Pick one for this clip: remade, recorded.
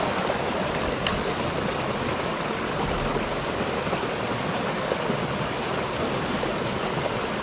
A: recorded